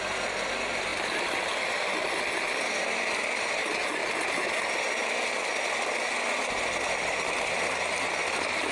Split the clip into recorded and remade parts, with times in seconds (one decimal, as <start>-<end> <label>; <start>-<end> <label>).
0.0-8.7 recorded